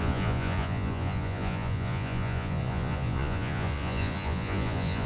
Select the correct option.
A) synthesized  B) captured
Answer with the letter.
A